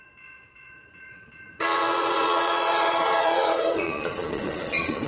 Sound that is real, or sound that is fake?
fake